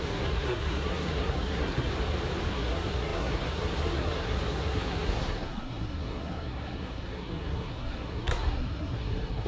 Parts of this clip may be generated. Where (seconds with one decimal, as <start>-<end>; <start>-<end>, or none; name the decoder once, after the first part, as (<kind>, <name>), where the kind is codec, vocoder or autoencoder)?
0.0-1.9 (codec, SNAC); 2.5-9.5